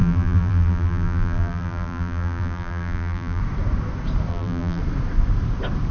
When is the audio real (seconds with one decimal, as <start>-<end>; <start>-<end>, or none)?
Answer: 3.4-4.3; 4.8-5.9